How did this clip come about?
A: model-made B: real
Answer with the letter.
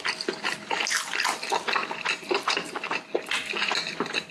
B